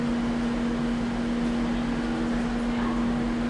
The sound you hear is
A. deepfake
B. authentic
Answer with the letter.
B